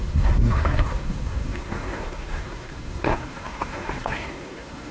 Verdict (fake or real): fake